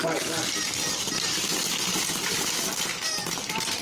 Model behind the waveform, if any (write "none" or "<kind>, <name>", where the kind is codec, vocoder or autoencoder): none